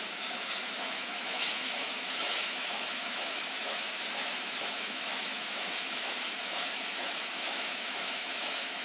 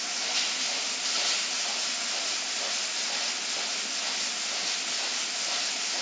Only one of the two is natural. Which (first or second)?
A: second